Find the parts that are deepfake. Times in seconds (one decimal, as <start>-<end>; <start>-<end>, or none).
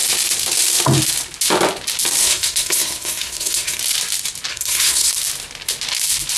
2.2-3.8; 4.5-5.1